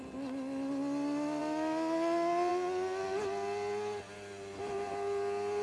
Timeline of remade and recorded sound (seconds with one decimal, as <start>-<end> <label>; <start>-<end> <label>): 0.0-5.6 recorded